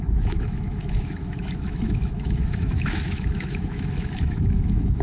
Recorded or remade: remade